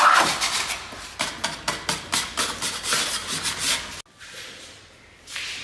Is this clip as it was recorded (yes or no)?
yes